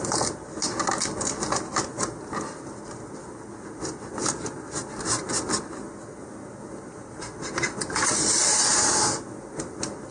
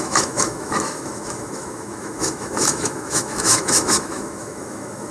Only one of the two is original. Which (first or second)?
first